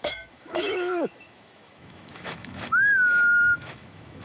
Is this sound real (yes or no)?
no